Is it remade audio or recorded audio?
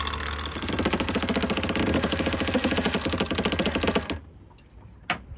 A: recorded